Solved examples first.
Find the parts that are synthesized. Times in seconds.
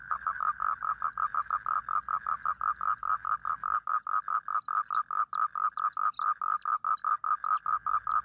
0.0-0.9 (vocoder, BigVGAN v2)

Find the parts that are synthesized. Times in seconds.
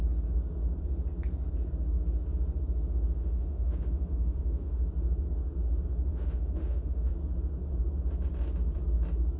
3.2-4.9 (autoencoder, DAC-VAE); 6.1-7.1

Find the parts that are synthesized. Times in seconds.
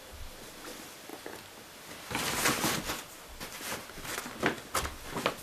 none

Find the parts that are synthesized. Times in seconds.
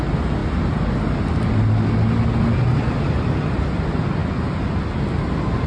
none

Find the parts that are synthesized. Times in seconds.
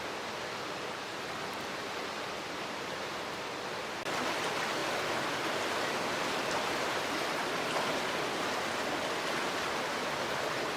none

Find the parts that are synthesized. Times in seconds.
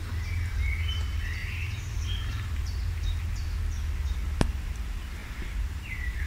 1.4-3.6 (vocoder, BigVGAN v2); 5.2-6.3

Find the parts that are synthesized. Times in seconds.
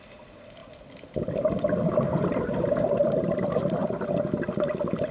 none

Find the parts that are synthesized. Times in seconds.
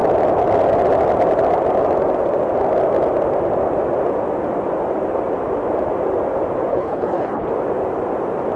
6.7-7.5 (codec, HILCodec)